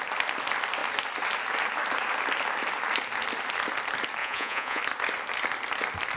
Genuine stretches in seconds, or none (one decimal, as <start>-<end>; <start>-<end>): 0.0-4.2; 4.8-6.2